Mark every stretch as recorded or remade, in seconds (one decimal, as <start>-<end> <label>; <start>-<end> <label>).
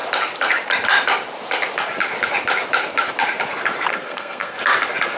0.0-3.9 recorded; 3.9-4.6 remade; 4.6-5.2 recorded